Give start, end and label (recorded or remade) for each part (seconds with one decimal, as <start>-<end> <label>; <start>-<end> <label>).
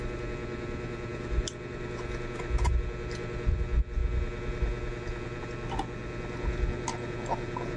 0.0-7.8 recorded